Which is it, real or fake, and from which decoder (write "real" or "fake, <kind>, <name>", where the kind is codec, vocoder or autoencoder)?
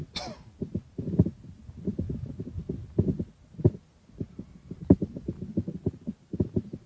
real